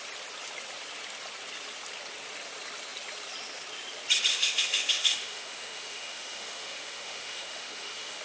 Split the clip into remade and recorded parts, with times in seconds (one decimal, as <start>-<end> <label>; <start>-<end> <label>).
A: 0.0-4.3 recorded; 4.3-8.2 remade